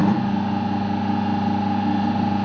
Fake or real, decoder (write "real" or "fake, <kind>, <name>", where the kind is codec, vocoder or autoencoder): real